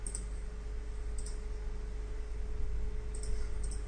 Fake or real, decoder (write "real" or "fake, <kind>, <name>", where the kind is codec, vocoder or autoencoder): real